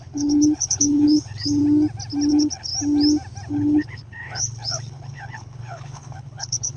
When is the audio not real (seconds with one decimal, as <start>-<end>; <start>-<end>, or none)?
0.0-1.6; 2.3-2.7; 3.5-6.8

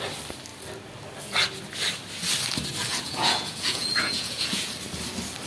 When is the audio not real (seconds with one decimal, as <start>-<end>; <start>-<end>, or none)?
2.9-4.7

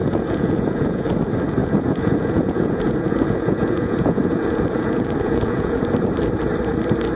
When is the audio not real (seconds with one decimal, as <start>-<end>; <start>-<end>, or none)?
0.0-1.1; 1.6-5.9

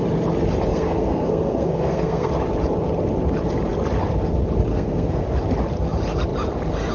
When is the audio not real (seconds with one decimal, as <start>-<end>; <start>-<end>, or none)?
0.7-2.3; 4.7-5.2

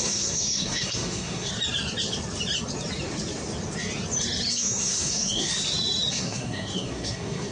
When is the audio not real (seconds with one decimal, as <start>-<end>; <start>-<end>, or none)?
0.0-1.5; 4.5-5.5; 6.1-7.5

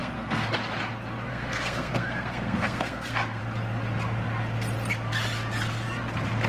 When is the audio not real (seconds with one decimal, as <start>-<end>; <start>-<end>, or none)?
0.0-0.5; 1.3-3.4